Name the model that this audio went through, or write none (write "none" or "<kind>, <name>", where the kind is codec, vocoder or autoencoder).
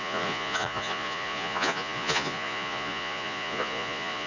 vocoder, Vocos